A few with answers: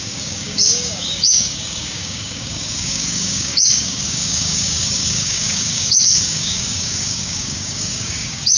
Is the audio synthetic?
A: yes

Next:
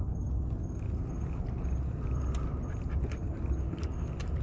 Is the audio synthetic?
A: no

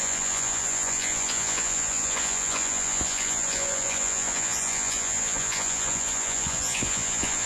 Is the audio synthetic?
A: yes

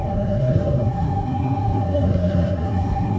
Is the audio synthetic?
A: yes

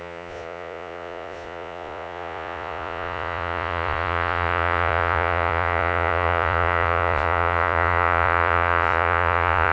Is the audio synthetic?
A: yes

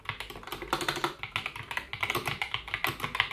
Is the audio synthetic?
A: no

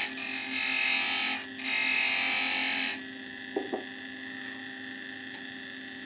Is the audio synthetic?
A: no